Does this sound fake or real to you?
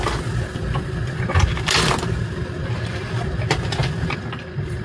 real